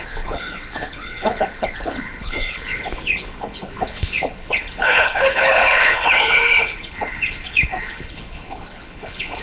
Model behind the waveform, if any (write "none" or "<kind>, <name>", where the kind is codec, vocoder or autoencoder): codec, HILCodec